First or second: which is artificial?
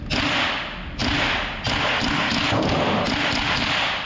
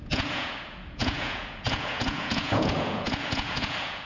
second